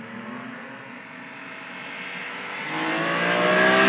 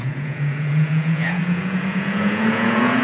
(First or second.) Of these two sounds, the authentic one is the first